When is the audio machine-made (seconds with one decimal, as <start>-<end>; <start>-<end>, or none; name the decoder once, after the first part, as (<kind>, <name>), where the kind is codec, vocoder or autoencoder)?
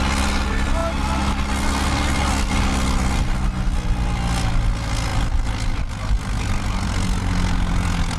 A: 5.1-6.9 (vocoder, BigVGAN v2)